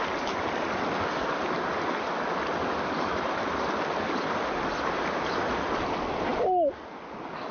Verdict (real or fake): real